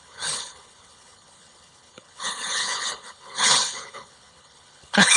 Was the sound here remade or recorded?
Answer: remade